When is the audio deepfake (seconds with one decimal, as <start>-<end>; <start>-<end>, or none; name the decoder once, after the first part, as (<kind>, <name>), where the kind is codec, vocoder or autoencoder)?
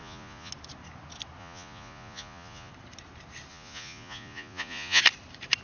0.0-0.5 (vocoder, Vocos); 1.4-2.7; 3.5-5.0